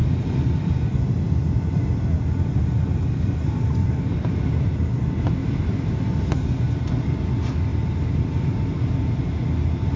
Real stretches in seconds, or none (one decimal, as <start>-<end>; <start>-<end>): 0.0-3.8; 4.4-5.4; 5.9-7.7; 8.7-10.0